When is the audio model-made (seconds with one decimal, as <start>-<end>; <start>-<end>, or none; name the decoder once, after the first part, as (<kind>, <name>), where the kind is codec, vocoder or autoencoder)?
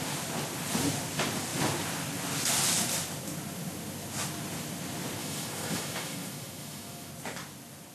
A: 5.2-7.1 (autoencoder, DAC-VAE)